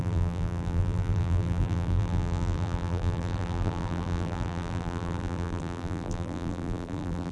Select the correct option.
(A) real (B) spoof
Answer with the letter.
B